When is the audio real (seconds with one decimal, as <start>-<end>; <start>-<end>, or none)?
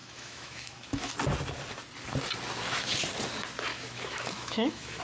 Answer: 1.1-3.7